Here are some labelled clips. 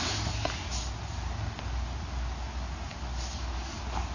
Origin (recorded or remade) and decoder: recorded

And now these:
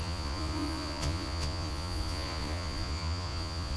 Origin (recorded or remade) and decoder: remade, vocoder, Vocos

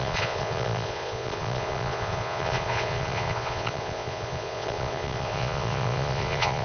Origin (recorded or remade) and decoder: remade, vocoder, Vocos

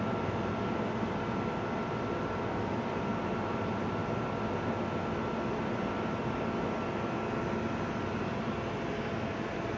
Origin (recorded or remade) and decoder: recorded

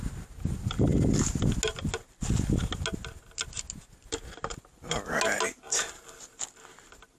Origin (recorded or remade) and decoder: recorded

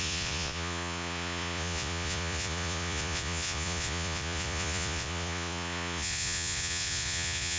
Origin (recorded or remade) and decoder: remade, vocoder, Vocos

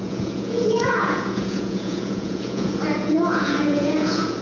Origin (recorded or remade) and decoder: remade, vocoder, Vocos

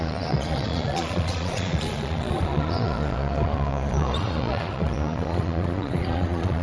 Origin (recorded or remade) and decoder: remade, vocoder, Vocos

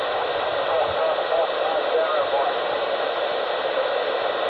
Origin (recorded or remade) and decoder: recorded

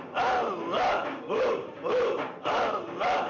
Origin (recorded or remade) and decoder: recorded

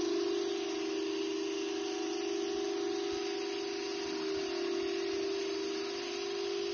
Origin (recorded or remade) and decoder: recorded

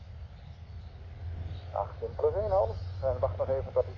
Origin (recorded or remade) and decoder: recorded